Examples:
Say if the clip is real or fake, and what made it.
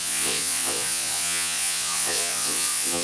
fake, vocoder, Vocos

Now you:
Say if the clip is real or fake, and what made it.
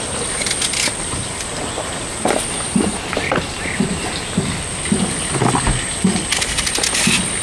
real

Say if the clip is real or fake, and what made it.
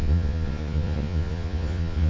fake, vocoder, Vocos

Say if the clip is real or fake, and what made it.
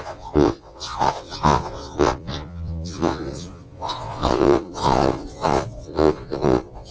fake, vocoder, Vocos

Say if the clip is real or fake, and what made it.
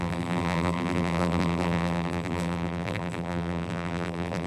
fake, vocoder, BigVGAN v2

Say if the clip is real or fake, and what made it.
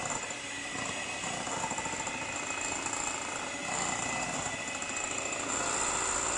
fake, vocoder, BigVGAN v2